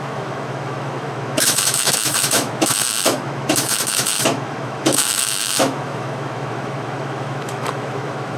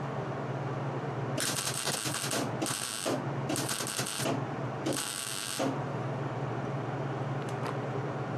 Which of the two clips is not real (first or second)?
first